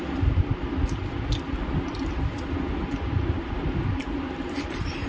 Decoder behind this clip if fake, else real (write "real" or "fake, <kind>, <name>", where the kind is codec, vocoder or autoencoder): real